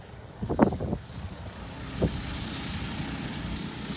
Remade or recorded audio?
recorded